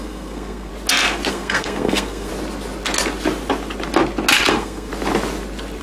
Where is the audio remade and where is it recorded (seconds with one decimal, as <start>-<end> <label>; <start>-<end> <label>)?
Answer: 0.0-0.7 remade; 0.7-1.3 recorded; 1.3-2.3 remade; 2.3-4.5 recorded; 4.5-4.9 remade; 4.9-5.8 recorded